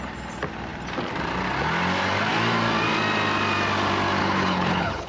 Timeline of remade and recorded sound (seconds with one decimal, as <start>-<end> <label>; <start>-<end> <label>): 0.0-4.2 recorded; 4.2-5.1 remade